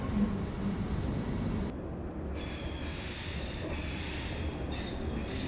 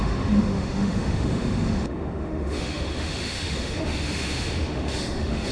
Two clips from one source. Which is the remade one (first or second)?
second